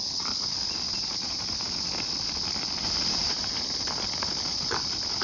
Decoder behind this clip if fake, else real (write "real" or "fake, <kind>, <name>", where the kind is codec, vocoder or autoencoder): real